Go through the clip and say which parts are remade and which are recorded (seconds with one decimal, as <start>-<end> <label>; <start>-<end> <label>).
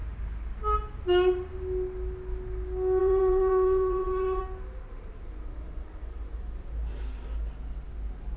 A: 0.0-3.0 recorded; 3.0-4.4 remade; 4.4-8.4 recorded